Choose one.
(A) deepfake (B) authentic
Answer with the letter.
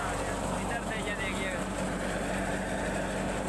B